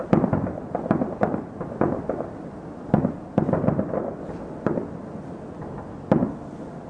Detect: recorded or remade recorded